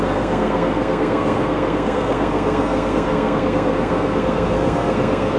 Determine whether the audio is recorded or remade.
remade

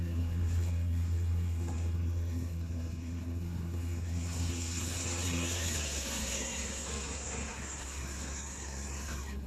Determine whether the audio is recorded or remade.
remade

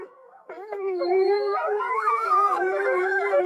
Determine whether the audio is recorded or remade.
remade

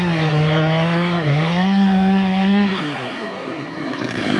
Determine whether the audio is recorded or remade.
remade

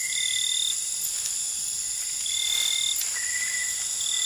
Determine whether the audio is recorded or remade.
recorded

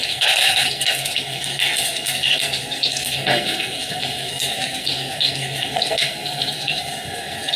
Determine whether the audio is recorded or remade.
remade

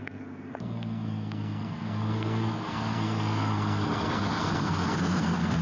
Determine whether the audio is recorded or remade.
remade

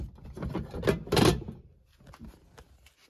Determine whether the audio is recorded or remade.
recorded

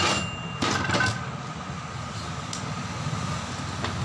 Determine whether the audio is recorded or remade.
recorded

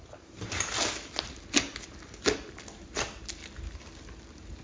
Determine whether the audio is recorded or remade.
recorded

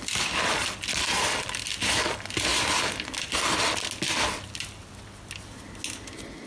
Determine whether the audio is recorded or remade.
recorded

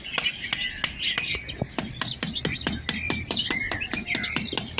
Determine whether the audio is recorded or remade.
recorded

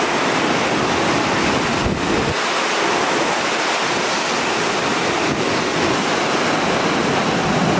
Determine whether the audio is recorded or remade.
recorded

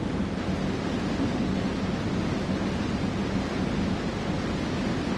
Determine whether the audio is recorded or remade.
recorded